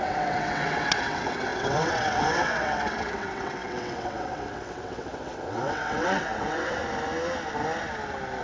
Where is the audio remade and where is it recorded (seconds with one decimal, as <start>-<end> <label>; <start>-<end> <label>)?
0.0-6.8 remade; 6.8-8.4 recorded